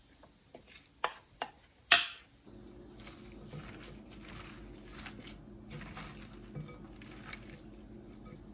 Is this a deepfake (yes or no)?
no